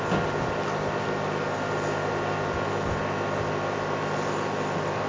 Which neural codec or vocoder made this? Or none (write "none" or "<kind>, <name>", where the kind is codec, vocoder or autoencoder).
none